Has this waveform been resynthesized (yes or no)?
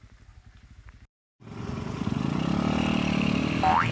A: no